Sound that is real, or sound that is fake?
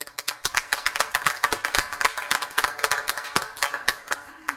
fake